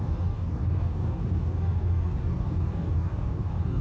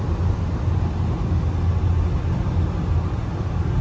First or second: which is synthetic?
first